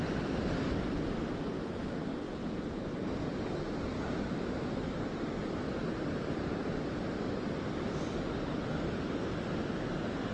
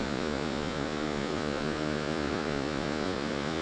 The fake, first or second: second